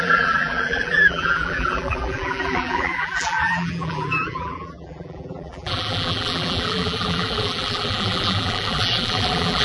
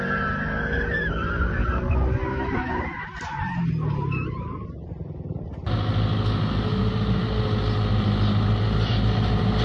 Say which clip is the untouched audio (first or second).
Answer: second